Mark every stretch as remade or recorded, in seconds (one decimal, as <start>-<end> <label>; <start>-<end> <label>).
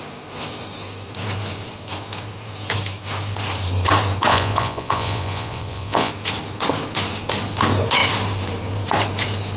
0.0-4.3 recorded; 4.3-6.1 remade; 6.1-9.6 recorded